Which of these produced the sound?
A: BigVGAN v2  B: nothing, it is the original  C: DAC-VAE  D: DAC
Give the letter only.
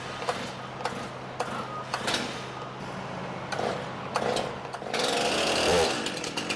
B